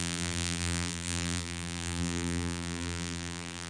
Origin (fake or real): fake